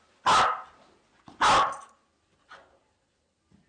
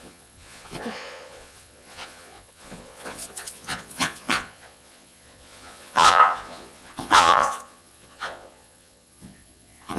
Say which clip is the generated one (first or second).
second